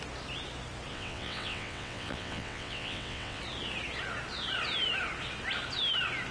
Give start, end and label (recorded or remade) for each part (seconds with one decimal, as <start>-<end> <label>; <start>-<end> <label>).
0.0-0.9 recorded; 0.9-3.4 remade; 3.4-6.3 recorded